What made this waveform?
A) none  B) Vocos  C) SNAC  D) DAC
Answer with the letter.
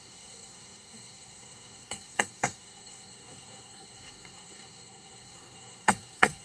C